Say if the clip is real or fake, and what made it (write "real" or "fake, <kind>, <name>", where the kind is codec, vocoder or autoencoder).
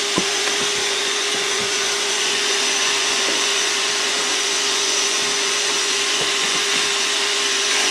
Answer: fake, vocoder, Vocos